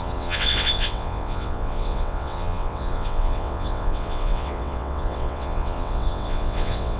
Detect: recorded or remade remade